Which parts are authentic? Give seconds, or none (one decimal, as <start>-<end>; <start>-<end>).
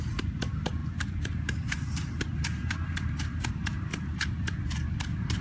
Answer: 3.9-4.9